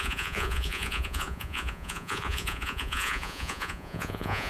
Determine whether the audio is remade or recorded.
remade